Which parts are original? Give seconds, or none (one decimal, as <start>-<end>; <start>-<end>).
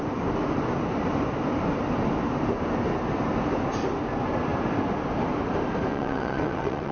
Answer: 0.0-5.9